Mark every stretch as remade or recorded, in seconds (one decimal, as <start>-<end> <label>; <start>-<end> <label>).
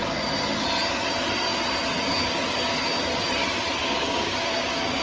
0.0-3.8 recorded; 3.8-5.0 remade